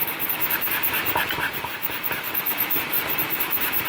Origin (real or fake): real